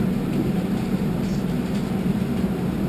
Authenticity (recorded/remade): remade